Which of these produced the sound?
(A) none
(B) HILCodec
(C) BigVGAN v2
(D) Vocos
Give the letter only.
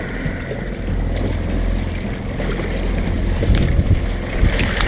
A